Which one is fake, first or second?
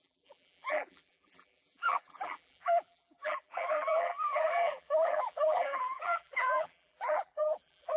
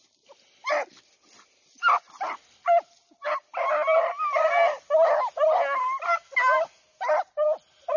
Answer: first